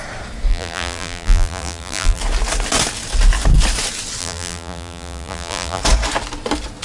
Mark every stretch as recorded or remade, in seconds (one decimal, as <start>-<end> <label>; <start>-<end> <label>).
0.0-0.5 recorded; 0.5-2.2 remade; 2.2-4.2 recorded; 4.2-5.8 remade; 5.8-6.8 recorded